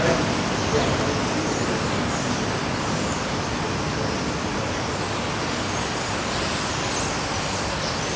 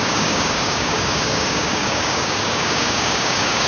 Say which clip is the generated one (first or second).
second